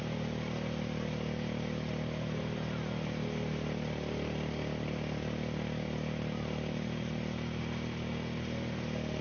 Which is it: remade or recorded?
recorded